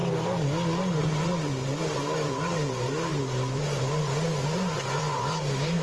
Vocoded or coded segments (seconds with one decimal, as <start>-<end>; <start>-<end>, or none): 1.0-5.8